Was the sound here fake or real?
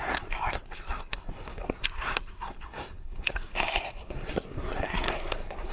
fake